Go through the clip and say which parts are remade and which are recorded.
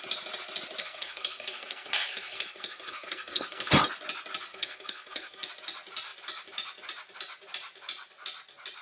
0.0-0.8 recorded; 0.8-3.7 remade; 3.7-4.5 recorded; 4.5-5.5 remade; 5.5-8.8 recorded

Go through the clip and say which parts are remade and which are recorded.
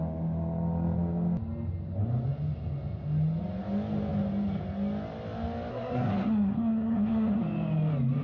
0.0-5.7 recorded; 5.7-7.4 remade; 7.4-8.2 recorded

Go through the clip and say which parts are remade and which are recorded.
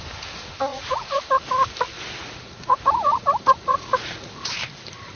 0.0-0.7 recorded; 0.7-1.2 remade; 1.2-2.2 recorded; 2.2-4.3 remade; 4.3-5.2 recorded